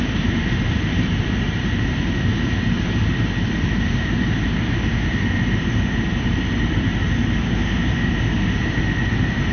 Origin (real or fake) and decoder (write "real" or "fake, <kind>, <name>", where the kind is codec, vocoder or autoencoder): fake, vocoder, BigVGAN v2